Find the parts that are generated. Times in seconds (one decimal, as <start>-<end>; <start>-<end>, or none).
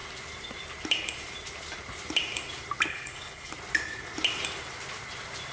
2.9-3.5